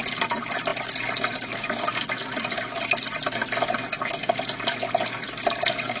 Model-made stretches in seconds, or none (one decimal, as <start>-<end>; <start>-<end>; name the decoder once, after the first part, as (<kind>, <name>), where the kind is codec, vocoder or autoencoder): none